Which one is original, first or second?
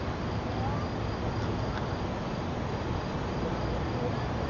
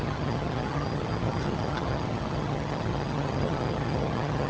first